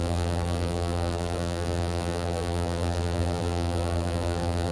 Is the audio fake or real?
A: fake